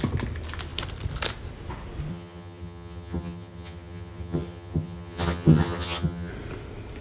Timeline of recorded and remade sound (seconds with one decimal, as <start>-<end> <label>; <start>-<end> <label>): 0.0-2.1 recorded; 2.1-6.3 remade; 6.3-7.0 recorded